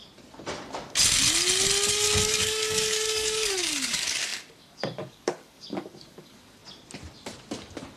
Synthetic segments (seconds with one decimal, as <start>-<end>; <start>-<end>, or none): 1.9-6.6